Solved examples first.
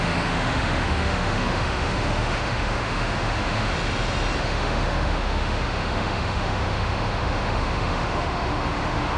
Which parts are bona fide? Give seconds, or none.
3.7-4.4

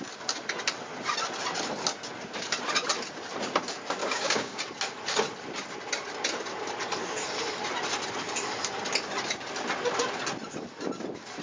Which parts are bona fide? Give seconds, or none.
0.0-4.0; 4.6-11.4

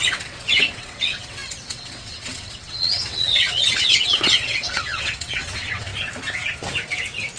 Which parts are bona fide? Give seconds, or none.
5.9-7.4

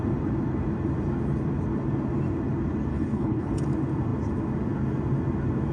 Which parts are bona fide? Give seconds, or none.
0.0-2.9; 3.5-5.7